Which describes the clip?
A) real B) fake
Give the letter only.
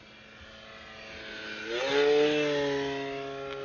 A